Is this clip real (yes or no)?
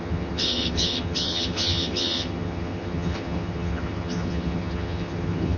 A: no